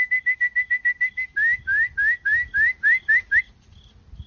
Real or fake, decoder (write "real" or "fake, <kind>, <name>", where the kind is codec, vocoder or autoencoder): real